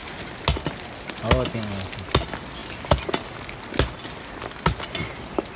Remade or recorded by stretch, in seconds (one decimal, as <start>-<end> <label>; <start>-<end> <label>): 0.0-5.6 recorded